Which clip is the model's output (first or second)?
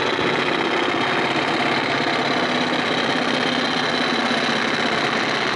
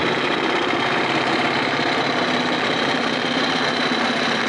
second